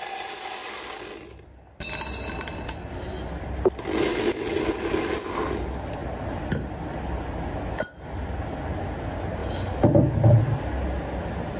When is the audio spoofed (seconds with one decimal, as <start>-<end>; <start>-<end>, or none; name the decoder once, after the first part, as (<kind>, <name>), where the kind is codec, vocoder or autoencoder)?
none